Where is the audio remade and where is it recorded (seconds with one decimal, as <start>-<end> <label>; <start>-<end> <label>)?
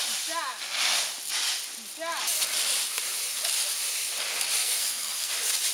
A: 0.0-4.6 recorded; 4.6-5.3 remade; 5.3-5.7 recorded